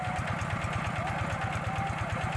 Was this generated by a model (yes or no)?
no